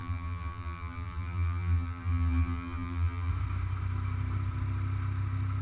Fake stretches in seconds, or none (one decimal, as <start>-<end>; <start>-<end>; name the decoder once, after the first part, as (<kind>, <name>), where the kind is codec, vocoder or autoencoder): 0.0-3.3 (vocoder, BigVGAN v2)